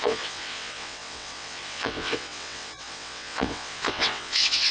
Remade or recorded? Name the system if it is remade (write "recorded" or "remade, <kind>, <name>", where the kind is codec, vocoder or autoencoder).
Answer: remade, vocoder, WaveNeXt